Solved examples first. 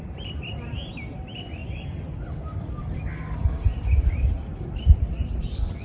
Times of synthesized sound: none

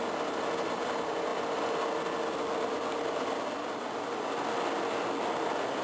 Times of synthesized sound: none